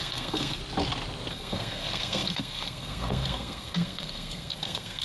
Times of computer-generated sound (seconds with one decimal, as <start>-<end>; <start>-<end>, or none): 0.0-0.6; 1.3-5.0